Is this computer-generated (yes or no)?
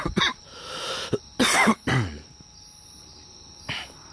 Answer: no